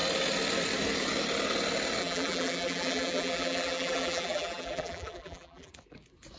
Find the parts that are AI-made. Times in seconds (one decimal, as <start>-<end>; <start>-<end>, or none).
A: 2.0-5.7